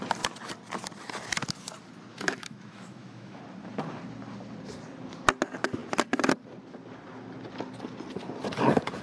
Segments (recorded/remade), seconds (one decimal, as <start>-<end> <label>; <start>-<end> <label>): 0.0-2.1 recorded; 2.1-3.4 remade; 3.4-9.0 recorded